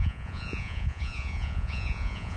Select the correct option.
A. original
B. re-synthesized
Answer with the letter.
B